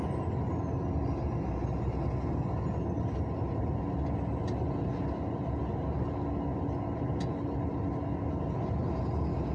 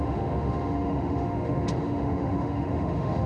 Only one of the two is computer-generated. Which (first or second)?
second